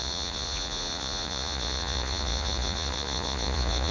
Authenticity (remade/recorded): remade